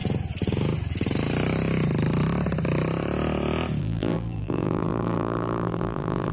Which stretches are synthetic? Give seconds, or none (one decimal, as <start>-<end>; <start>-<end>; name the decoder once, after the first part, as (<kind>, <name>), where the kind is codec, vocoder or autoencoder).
3.8-6.3 (vocoder, BigVGAN v2)